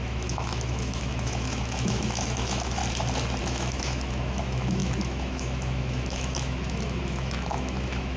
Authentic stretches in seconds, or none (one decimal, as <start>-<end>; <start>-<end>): 2.8-3.4